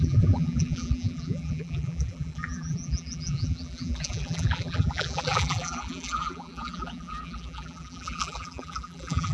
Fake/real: fake